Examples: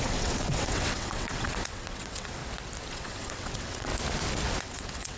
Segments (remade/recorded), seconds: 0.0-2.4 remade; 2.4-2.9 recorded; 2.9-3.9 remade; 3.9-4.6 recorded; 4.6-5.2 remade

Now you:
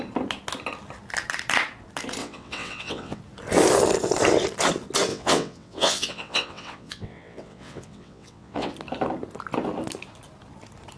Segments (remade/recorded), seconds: 0.0-2.2 recorded; 2.2-3.2 remade; 3.2-5.1 recorded; 5.1-8.7 remade; 8.7-11.0 recorded